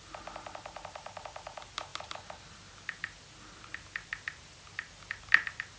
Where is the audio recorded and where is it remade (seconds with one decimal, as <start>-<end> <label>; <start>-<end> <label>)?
0.0-5.8 recorded